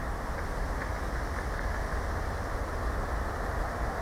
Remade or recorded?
recorded